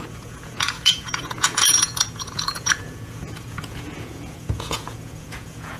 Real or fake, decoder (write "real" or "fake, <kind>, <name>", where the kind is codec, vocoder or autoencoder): fake, vocoder, Vocos